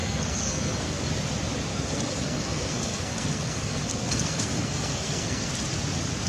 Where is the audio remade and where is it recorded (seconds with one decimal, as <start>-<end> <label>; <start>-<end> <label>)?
0.0-1.1 remade; 1.1-1.7 recorded; 1.7-5.5 remade; 5.5-6.3 recorded